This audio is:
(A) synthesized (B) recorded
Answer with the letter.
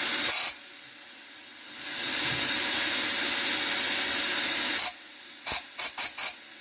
B